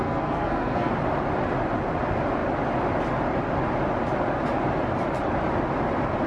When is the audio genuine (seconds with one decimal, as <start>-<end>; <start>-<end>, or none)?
0.9-6.3